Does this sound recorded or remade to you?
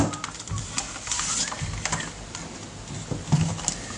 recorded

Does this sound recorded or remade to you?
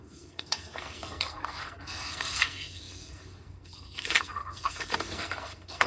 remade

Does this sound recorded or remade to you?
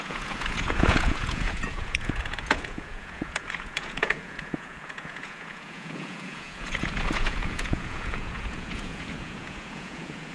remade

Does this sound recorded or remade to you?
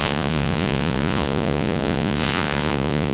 remade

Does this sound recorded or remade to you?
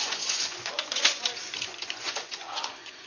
remade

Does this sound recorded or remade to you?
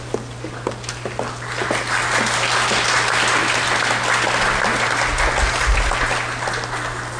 recorded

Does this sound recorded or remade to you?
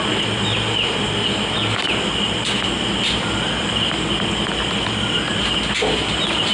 recorded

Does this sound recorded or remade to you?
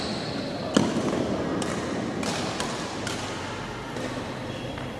recorded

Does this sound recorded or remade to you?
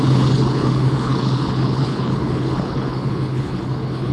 remade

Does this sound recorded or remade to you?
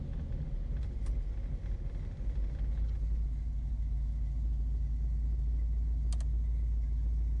recorded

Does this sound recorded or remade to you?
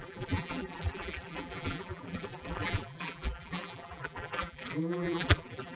remade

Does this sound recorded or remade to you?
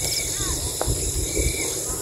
recorded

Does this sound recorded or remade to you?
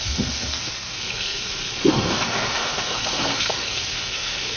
remade